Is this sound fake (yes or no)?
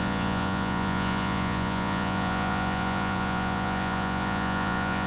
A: yes